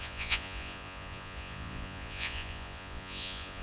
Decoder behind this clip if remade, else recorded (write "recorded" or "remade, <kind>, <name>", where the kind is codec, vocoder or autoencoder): remade, vocoder, Vocos